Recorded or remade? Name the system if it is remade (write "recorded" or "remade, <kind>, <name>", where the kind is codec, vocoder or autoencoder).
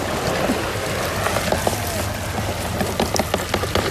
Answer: recorded